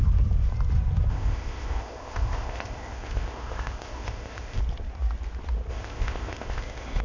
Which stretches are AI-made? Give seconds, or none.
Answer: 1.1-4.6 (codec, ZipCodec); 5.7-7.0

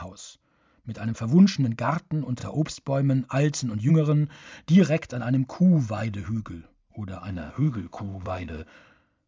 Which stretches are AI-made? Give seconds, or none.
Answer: 7.3-8.7 (codec, ZipCodec)

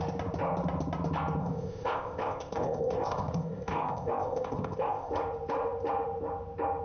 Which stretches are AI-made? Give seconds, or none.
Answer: 1.4-5.1 (codec, ZipCodec)

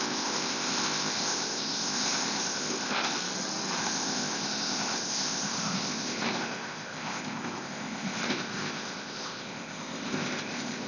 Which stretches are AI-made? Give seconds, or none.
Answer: 0.0-3.1 (codec, ZipCodec); 3.8-10.9

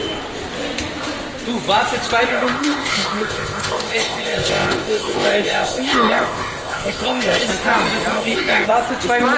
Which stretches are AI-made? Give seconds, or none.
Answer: 2.3-7.5 (codec, ZipCodec); 8.1-8.7

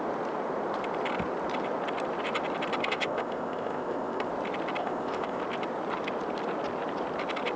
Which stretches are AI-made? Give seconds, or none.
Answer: 2.8-4.3 (codec, ZipCodec); 4.8-5.4

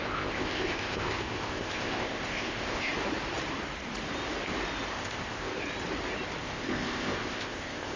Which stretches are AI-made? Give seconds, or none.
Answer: 0.0-2.9 (codec, ZipCodec); 4.9-5.5; 6.4-8.0